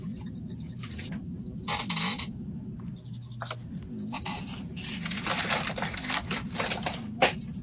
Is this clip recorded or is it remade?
recorded